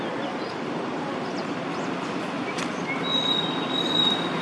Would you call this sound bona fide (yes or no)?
yes